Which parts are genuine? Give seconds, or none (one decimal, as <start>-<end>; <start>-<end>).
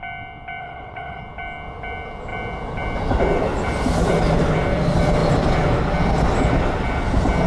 0.0-0.6; 1.2-7.5